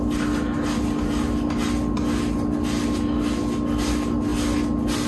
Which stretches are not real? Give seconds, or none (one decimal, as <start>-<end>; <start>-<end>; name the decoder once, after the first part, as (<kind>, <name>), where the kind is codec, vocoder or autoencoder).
none